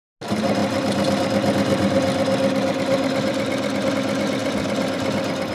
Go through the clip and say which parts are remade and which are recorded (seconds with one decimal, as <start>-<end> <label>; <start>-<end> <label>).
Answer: 0.0-5.5 recorded